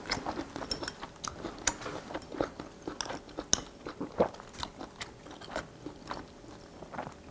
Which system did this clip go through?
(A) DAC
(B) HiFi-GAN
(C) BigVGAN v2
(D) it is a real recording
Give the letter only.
D